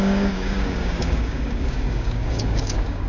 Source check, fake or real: fake